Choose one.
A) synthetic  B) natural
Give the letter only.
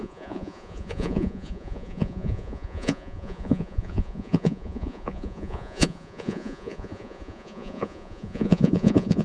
A